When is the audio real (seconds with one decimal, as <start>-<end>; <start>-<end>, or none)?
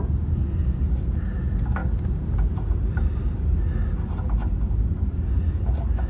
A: 0.0-6.1